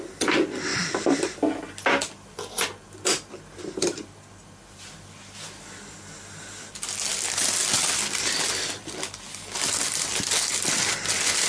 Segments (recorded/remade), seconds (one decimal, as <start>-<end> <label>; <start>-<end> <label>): 0.0-11.5 recorded